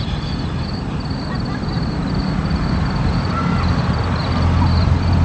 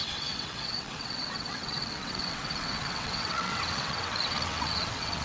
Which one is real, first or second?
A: first